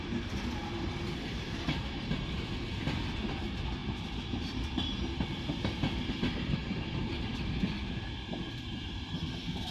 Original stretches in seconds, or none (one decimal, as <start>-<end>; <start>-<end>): 0.0-0.6; 2.4-3.8; 5.0-6.6; 7.1-9.7